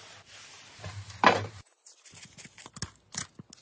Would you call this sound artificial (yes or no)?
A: no